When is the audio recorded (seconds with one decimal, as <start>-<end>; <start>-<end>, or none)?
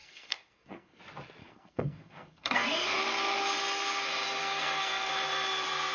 1.0-1.4; 3.0-4.4; 5.1-5.9